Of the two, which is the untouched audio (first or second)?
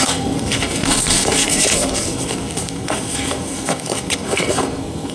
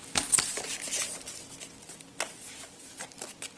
second